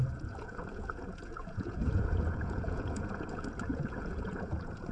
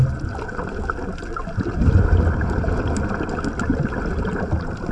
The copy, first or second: first